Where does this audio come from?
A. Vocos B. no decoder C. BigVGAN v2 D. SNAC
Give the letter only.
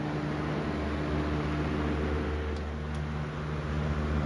B